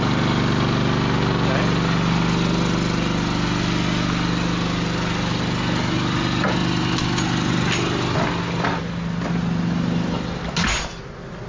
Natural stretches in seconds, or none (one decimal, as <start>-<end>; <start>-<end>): 0.0-11.5